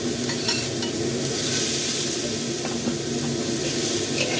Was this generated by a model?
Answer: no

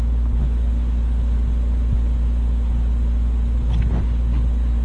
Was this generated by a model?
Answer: no